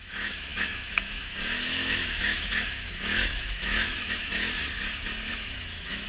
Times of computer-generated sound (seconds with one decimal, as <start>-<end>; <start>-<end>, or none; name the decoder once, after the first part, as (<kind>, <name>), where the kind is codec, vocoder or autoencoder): 0.0-4.6 (autoencoder, DAC-VAE); 5.3-6.1